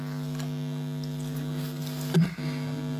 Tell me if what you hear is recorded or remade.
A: recorded